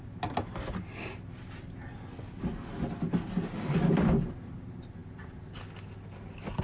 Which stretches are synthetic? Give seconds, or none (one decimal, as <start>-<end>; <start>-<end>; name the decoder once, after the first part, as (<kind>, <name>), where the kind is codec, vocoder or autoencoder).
none